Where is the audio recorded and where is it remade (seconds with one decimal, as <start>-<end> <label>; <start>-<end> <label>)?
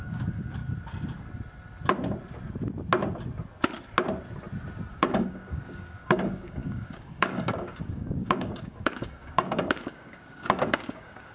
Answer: 0.0-0.6 remade; 0.6-4.9 recorded; 4.9-11.3 remade